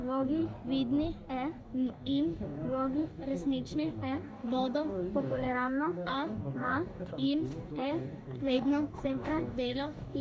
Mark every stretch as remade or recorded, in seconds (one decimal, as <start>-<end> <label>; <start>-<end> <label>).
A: 0.0-0.4 remade; 0.4-1.6 recorded; 1.6-10.2 remade